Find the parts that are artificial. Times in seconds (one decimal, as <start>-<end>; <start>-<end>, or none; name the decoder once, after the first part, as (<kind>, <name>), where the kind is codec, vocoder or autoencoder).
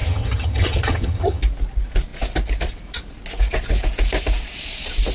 0.0-1.4 (vocoder, HiFi-GAN)